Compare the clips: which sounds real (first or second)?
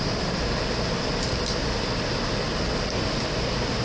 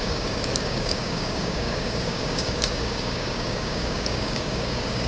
first